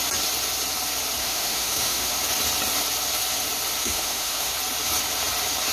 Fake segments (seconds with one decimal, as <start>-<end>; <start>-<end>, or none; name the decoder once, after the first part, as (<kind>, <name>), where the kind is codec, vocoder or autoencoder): 1.2-2.1 (autoencoder, DAC-VAE); 3.8-4.5